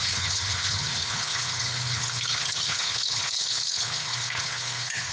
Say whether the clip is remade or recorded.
remade